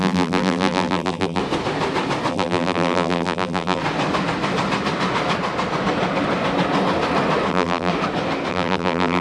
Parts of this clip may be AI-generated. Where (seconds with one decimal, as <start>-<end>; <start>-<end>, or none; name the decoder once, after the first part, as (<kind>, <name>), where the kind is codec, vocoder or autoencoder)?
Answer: 0.0-1.4 (vocoder, BigVGAN v2); 2.3-3.8; 7.5-7.9; 8.5-9.2